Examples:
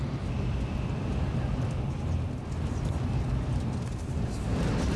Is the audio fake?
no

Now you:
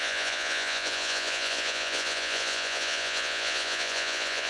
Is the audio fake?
yes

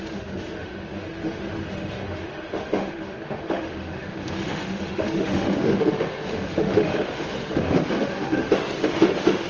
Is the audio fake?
yes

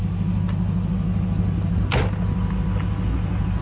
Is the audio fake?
no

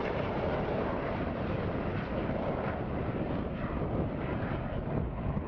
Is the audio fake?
no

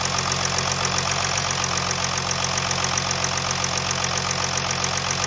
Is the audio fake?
no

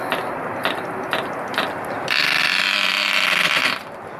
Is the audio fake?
no